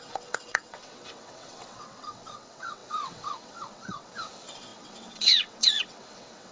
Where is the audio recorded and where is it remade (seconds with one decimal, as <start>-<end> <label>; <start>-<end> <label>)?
0.0-6.5 remade